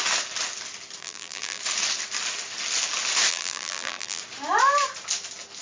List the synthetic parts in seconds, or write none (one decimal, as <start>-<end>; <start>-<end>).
1.0-1.6; 3.3-4.2